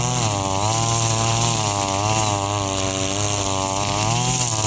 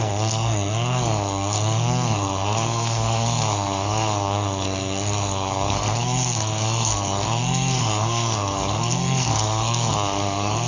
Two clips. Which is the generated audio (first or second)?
second